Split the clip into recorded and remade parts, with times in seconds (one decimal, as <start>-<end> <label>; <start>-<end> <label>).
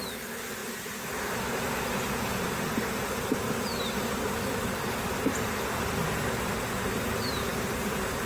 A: 0.0-8.3 recorded